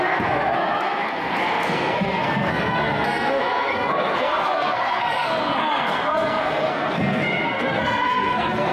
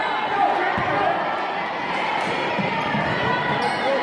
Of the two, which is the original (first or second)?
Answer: second